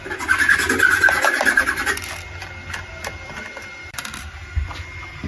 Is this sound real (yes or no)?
yes